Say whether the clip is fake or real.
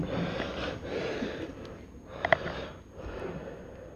real